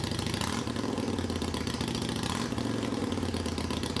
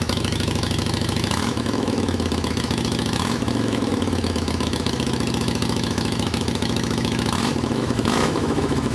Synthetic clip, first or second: second